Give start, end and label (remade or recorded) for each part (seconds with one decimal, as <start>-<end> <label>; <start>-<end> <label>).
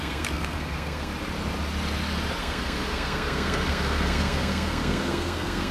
0.0-1.1 remade; 1.1-2.4 recorded; 2.4-5.7 remade